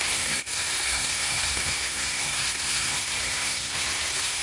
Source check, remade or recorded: remade